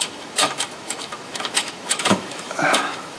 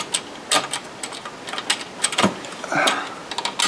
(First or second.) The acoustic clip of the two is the second